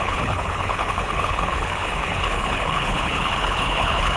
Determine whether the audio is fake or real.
fake